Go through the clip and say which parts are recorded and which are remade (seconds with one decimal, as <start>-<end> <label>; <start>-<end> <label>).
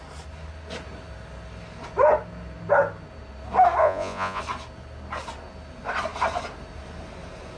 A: 0.0-3.8 recorded; 3.8-4.4 remade; 4.4-7.6 recorded